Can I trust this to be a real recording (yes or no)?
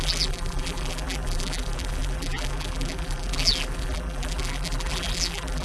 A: no